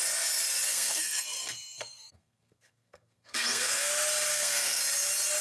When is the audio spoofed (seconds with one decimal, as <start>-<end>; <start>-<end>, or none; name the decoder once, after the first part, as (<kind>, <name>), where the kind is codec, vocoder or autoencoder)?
0.7-3.9 (codec, SNAC); 4.3-4.8